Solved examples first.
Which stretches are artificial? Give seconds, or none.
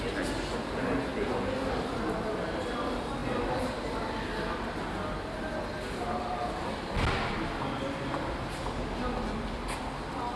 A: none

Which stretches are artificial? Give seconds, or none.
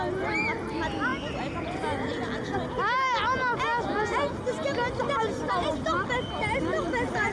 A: none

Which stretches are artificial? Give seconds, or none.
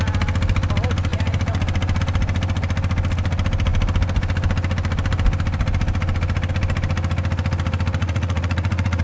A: 8.0-9.0 (vocoder, Vocos)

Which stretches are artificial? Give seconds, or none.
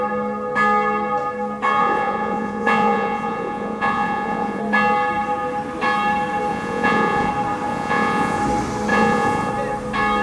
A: 1.8-4.6 (vocoder, Vocos); 6.5-7.3; 7.7-8.4; 8.9-9.5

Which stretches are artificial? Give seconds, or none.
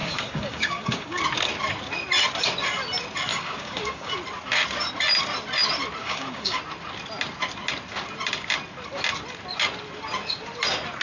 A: 0.0-1.2 (codec, DAC); 3.3-4.1; 6.0-6.6